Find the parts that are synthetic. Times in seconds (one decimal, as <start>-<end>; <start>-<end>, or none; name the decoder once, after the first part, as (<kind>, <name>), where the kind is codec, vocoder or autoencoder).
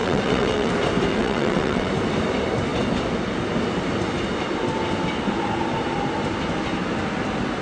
0.0-0.7 (vocoder, WaveNeXt); 1.1-1.9